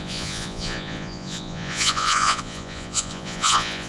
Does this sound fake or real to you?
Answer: fake